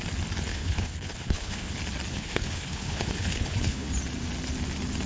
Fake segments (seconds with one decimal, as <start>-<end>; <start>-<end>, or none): 0.5-1.7; 2.1-3.9